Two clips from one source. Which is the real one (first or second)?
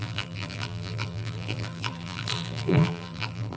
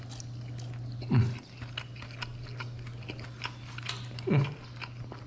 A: second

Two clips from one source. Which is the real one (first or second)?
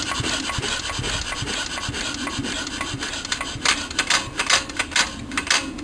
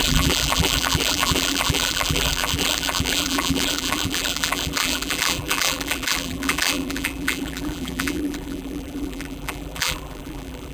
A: first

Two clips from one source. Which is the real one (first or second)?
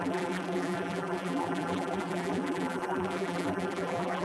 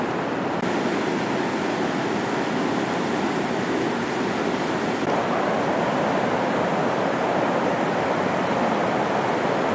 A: second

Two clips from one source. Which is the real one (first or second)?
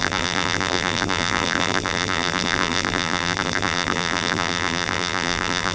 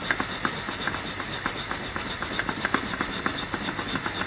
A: second